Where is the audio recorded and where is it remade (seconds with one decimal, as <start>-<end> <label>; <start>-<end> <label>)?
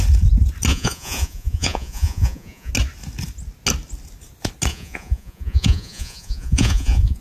0.0-0.7 recorded; 0.7-2.7 remade; 2.7-4.7 recorded; 4.7-7.2 remade